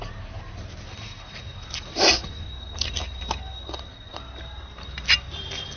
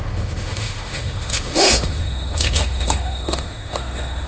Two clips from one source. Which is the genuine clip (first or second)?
first